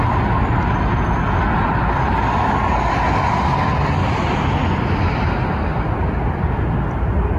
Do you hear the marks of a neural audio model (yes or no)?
no